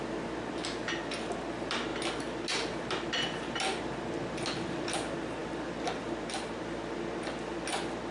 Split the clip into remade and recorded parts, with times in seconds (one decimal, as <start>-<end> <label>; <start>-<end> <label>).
0.0-8.1 recorded